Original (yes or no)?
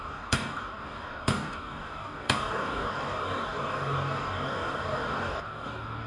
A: no